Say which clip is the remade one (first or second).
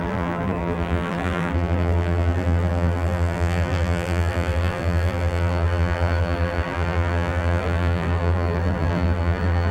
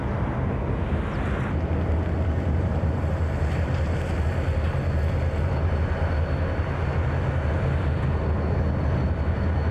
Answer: first